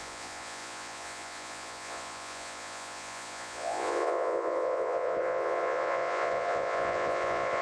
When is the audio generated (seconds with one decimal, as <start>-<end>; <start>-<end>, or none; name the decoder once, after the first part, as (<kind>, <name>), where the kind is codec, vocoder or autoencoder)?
0.0-7.6 (vocoder, Vocos)